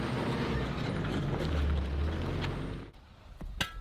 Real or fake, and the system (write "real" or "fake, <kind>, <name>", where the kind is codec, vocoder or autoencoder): real